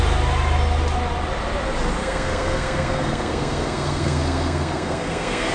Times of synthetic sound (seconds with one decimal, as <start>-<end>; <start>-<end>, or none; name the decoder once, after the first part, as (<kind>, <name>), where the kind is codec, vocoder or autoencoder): 2.0-5.5 (codec, SNAC)